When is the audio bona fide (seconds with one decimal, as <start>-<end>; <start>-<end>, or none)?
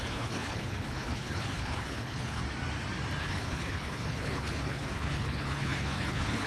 2.4-3.2